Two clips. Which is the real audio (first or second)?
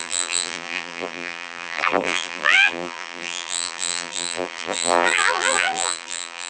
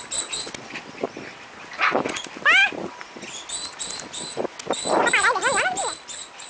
second